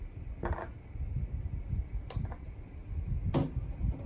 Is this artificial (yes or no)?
no